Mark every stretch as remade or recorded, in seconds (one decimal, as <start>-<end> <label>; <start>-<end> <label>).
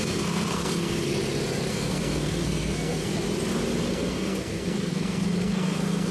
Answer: 0.0-1.1 remade; 1.1-1.7 recorded; 1.7-3.1 remade; 3.1-3.8 recorded; 3.8-6.1 remade